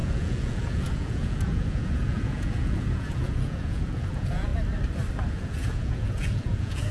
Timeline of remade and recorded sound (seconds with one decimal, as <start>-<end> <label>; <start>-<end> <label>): 0.0-4.5 remade; 4.5-5.3 recorded; 5.3-6.9 remade